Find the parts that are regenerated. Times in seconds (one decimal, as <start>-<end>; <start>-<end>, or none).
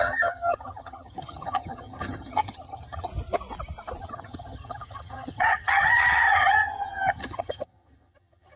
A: 0.0-3.1; 4.0-8.6